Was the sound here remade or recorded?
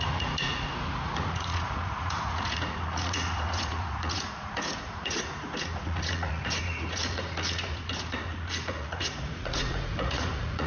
remade